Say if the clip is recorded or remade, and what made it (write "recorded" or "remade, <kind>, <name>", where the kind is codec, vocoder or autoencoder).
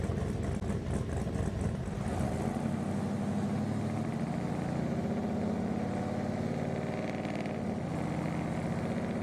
recorded